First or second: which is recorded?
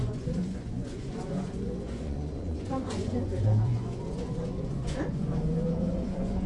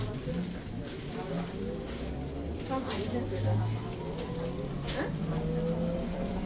second